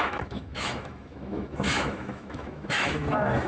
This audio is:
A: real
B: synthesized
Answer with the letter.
B